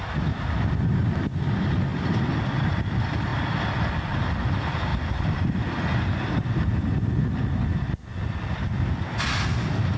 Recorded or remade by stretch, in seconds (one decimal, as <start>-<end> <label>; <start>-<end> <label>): 0.0-4.9 recorded; 4.9-6.9 remade; 6.9-10.0 recorded